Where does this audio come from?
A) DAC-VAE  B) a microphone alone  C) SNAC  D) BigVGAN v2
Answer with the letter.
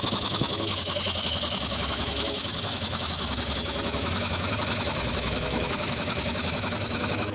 A